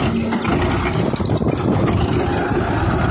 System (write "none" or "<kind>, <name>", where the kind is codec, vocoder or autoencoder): none